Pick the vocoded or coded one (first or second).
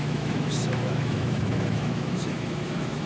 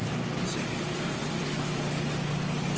first